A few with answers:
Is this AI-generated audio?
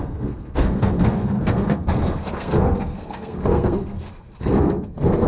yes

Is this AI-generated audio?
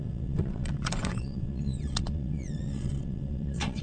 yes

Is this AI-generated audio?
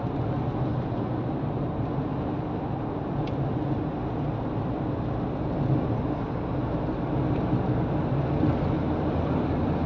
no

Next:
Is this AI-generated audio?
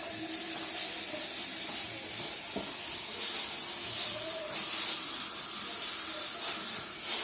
no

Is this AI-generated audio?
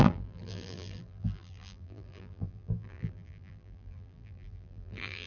yes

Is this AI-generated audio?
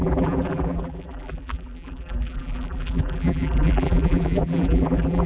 yes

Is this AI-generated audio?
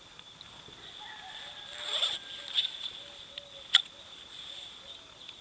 no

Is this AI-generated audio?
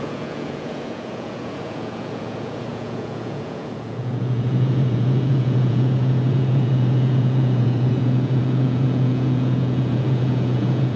yes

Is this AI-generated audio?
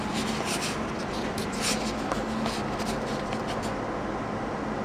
no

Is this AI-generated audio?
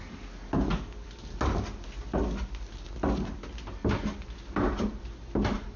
no